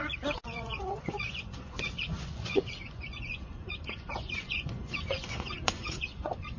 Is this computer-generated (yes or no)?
yes